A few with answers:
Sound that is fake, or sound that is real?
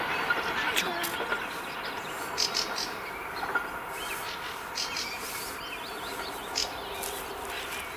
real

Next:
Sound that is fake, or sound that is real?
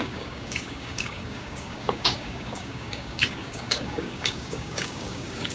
fake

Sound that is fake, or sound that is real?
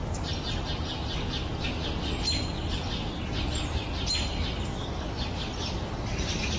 real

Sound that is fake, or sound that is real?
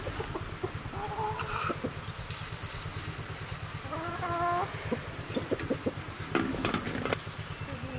real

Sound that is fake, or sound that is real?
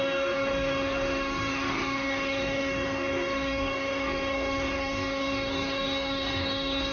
fake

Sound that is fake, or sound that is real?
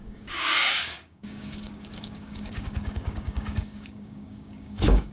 fake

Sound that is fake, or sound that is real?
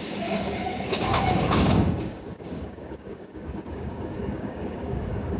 fake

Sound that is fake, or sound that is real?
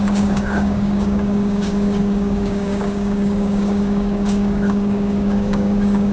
fake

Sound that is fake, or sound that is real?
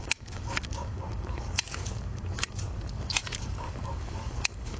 fake